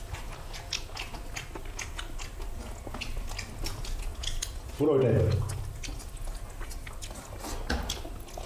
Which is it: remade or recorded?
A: recorded